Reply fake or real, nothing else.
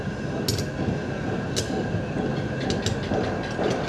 real